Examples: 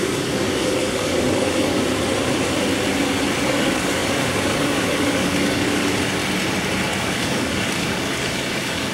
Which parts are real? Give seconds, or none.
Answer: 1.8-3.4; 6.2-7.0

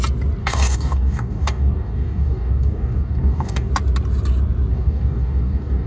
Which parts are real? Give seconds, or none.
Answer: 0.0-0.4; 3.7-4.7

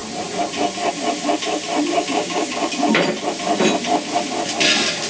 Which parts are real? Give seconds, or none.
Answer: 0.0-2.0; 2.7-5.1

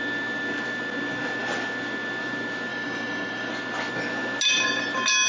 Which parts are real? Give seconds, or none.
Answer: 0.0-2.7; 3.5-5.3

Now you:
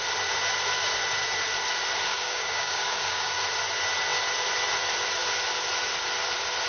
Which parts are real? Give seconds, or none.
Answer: 0.0-2.1; 3.4-6.7